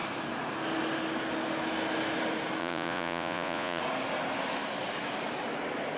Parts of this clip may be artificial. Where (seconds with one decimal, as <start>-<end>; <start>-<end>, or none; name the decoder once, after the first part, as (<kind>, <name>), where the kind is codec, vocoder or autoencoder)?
2.6-3.8 (vocoder, Vocos)